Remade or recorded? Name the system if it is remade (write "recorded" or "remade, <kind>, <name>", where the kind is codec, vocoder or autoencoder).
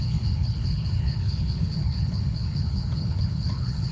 remade, codec, HILCodec